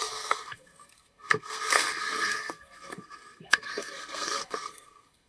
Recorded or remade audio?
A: remade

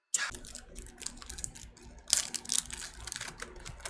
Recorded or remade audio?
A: recorded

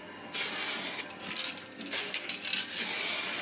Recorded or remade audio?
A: recorded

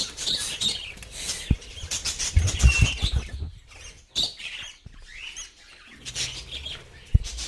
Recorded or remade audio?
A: recorded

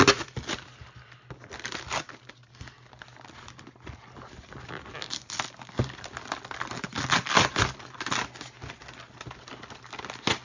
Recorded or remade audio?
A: recorded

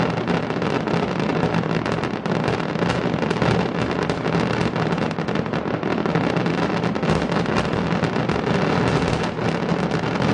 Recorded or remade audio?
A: recorded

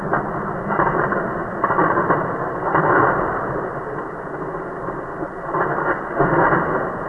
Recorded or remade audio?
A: recorded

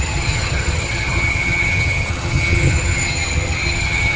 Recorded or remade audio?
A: remade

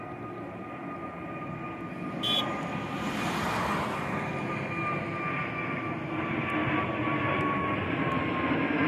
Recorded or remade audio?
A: recorded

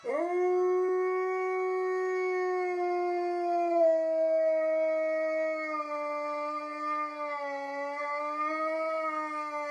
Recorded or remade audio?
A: recorded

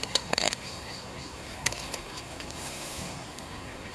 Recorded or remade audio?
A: remade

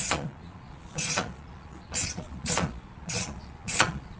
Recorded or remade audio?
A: remade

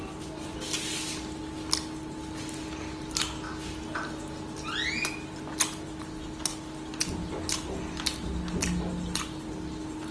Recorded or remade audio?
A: recorded